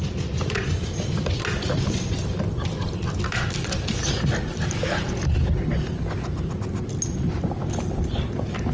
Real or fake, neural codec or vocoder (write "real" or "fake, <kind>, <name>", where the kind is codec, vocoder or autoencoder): real